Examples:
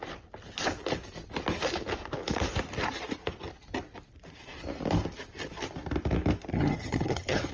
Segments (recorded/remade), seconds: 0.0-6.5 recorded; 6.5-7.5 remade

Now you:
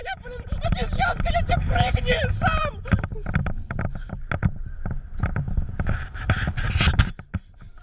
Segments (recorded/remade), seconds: 0.0-1.3 recorded; 1.3-3.1 remade; 3.1-7.8 recorded

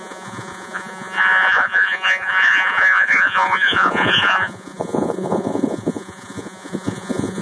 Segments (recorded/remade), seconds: 0.0-7.4 remade

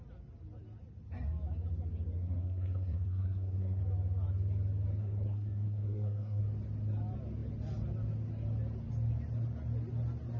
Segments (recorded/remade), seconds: 0.0-2.2 recorded; 2.2-3.8 remade; 3.8-5.0 recorded; 5.0-6.4 remade; 6.4-10.4 recorded

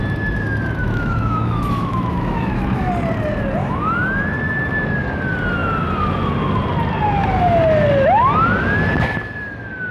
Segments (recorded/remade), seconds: 0.0-0.8 recorded; 0.8-2.9 remade; 2.9-3.6 recorded; 3.6-4.3 remade; 4.3-9.9 recorded

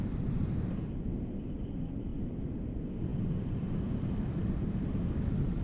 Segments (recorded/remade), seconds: 0.0-5.6 recorded

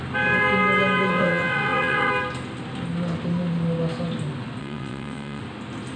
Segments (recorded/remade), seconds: 0.0-1.1 recorded; 1.1-2.1 remade; 2.1-4.6 recorded; 4.6-5.4 remade; 5.4-6.0 recorded